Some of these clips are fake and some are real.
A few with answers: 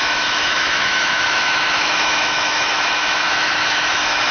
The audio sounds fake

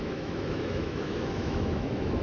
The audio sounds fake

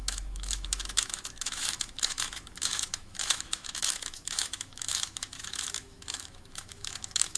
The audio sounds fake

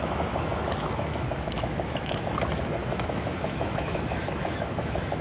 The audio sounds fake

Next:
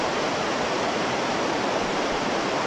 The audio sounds real